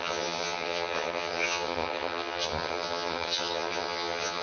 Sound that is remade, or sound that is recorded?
remade